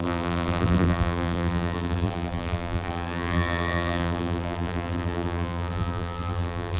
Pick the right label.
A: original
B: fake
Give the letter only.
B